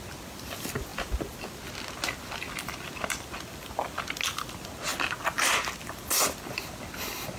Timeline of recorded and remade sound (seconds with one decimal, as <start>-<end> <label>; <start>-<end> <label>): 0.0-7.4 recorded